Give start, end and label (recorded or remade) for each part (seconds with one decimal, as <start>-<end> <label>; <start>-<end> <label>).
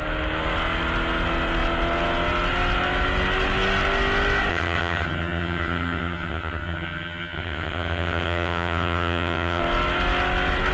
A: 0.0-4.5 recorded; 4.5-9.6 remade; 9.6-10.7 recorded